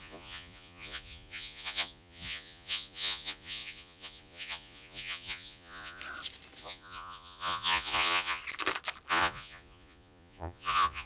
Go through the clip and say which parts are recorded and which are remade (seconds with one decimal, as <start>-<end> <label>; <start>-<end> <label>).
0.0-6.0 remade; 6.0-6.6 recorded; 6.6-8.4 remade; 8.4-9.1 recorded; 9.1-11.1 remade